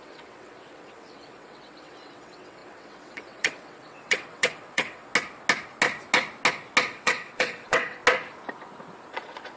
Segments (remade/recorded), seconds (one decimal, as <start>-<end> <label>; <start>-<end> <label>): 0.0-5.1 remade; 5.1-6.8 recorded; 6.8-8.0 remade; 8.0-9.1 recorded; 9.1-9.6 remade